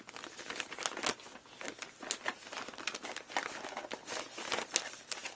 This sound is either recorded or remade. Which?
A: recorded